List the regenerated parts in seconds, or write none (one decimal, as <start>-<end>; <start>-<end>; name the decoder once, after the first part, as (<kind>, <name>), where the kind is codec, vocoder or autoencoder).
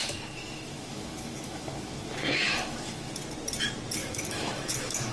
0.0-3.1 (autoencoder, DAC-VAE); 4.0-5.1